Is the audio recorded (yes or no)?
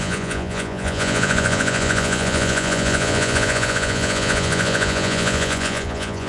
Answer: no